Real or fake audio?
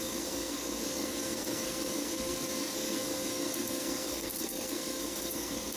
fake